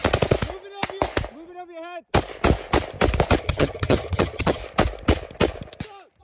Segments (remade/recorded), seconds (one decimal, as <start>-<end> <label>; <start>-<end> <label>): 0.0-3.4 recorded; 3.4-4.6 remade; 4.6-6.2 recorded